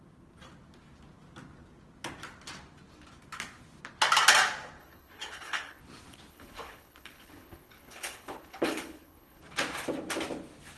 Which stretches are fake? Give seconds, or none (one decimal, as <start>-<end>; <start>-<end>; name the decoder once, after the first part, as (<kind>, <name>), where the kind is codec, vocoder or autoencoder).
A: 4.8-5.8 (codec, HILCodec); 6.3-9.4

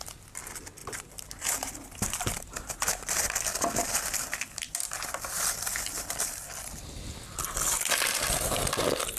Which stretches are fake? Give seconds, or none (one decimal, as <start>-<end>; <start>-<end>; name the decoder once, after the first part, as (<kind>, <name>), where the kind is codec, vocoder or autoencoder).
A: 0.8-3.2 (vocoder, BigVGAN v2)